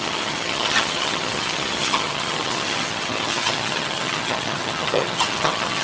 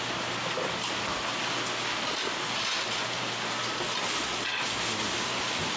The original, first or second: second